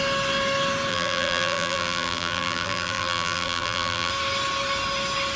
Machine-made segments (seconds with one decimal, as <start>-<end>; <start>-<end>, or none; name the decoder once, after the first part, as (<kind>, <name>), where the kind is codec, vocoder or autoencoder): 0.9-4.1 (vocoder, BigVGAN v2)